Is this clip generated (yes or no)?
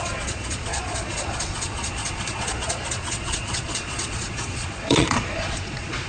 yes